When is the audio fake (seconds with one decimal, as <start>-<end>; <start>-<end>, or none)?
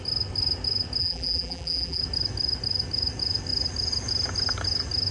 1.0-2.0